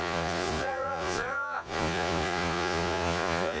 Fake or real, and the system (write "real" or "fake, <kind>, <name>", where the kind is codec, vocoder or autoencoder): fake, vocoder, Vocos